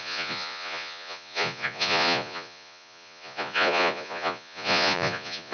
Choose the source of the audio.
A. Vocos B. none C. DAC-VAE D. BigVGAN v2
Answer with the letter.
A